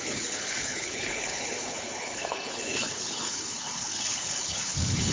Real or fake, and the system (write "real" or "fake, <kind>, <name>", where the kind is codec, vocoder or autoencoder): fake, codec, HILCodec